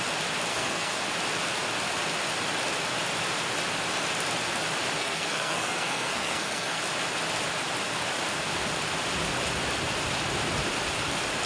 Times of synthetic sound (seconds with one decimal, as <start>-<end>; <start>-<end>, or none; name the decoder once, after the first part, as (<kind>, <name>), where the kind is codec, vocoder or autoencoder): 0.5-1.0 (codec, SNAC); 5.0-6.8